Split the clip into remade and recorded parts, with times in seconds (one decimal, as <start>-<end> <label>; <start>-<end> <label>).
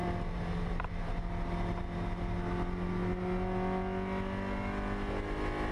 0.0-5.7 recorded